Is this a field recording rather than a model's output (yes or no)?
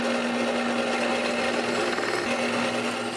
yes